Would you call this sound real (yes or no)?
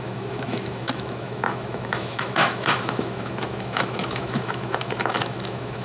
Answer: no